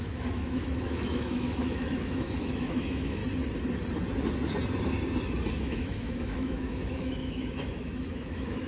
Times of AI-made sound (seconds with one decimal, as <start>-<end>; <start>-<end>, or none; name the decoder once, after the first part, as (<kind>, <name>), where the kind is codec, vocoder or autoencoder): 0.0-3.2 (autoencoder, DAC-VAE); 5.6-8.7